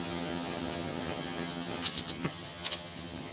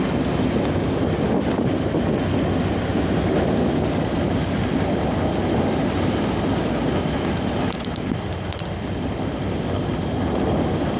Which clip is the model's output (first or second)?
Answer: first